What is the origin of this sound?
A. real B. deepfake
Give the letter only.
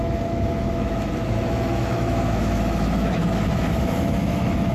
B